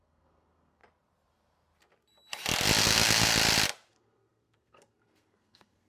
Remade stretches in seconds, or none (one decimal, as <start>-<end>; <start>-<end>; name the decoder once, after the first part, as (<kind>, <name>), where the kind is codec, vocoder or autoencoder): 0.0-0.8 (codec, SNAC); 2.8-3.3; 3.9-5.9